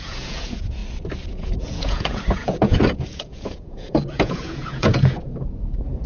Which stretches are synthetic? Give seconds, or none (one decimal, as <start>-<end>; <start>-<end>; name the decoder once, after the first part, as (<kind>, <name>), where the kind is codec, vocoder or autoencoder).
0.0-0.8 (vocoder, Vocos); 1.3-6.1